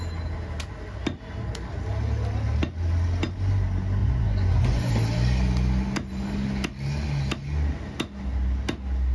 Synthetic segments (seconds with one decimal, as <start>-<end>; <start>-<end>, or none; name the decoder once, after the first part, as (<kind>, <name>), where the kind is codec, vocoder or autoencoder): 4.0-4.9 (vocoder, Vocos)